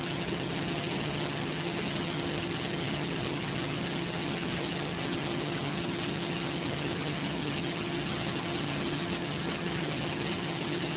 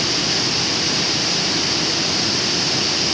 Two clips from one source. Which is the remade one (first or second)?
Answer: first